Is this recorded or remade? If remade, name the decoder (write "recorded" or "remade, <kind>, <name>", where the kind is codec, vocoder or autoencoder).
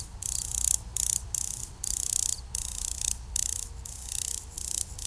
recorded